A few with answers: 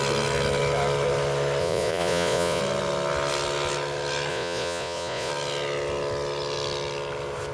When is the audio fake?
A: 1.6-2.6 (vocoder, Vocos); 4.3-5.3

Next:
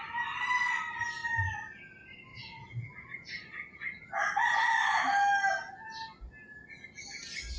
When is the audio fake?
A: 2.3-4.1 (vocoder, Vocos)

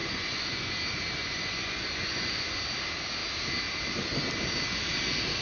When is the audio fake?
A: 0.0-0.7 (vocoder, Vocos); 1.2-2.6

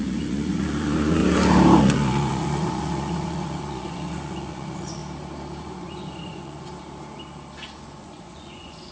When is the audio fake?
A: 0.0-1.2 (vocoder, Vocos); 1.8-5.0; 5.6-6.7; 7.8-8.9

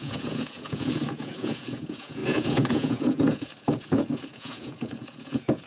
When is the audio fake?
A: 0.0-5.7 (vocoder, Vocos)

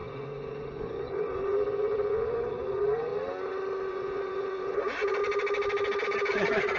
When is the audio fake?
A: 0.0-3.1 (vocoder, Vocos); 3.9-5.2; 6.3-6.8